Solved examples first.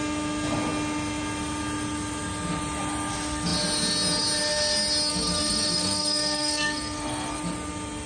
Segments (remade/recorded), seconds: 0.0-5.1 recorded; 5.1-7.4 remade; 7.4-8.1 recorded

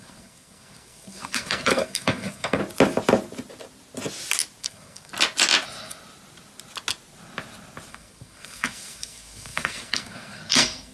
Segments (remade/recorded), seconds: 0.0-2.6 remade; 2.6-4.6 recorded; 4.6-5.1 remade; 5.1-7.9 recorded; 7.9-10.9 remade

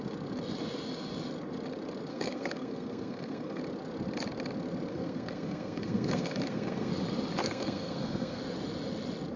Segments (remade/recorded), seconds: 0.0-2.1 recorded; 2.1-3.6 remade; 3.6-4.9 recorded; 4.9-6.9 remade; 6.9-7.4 recorded; 7.4-8.4 remade; 8.4-9.4 recorded

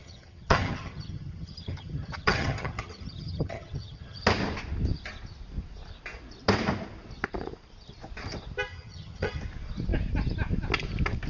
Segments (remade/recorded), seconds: 0.0-4.2 remade; 4.2-8.7 recorded; 8.7-9.4 remade; 9.4-11.3 recorded

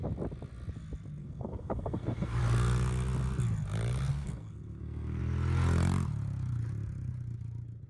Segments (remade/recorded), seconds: 0.0-1.2 recorded; 1.2-2.4 remade; 2.4-4.1 recorded; 4.1-5.2 remade; 5.2-7.9 recorded

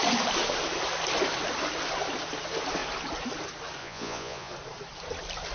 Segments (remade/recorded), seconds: 0.0-3.8 recorded; 3.8-4.5 remade; 4.5-5.5 recorded

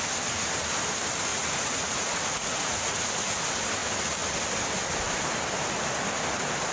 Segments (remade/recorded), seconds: 0.0-1.3 recorded; 1.3-3.4 remade; 3.4-6.7 recorded